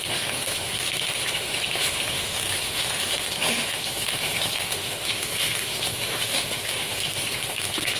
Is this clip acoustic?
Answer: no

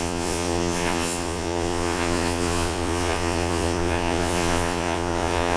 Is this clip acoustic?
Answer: no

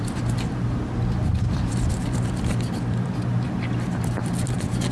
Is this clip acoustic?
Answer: no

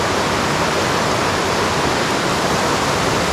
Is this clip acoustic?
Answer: yes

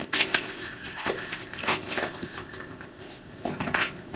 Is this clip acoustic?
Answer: no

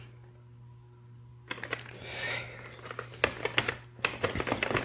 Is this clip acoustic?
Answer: yes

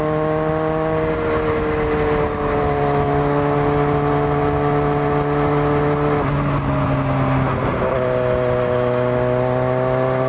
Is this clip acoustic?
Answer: yes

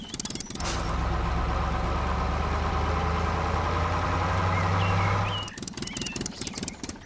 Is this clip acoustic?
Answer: yes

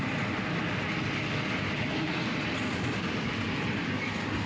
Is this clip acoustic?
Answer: yes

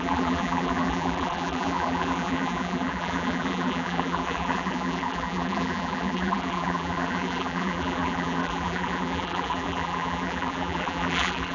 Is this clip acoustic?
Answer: no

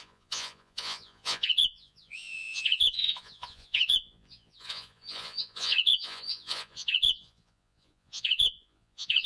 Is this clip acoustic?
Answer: no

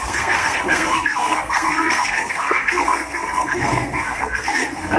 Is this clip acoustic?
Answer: no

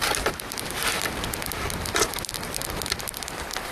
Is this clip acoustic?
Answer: yes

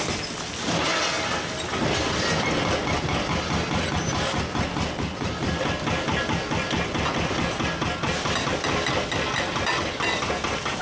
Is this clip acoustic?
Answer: yes